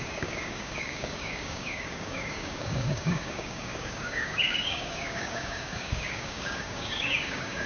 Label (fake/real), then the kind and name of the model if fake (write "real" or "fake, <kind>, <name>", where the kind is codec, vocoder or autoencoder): fake, codec, DAC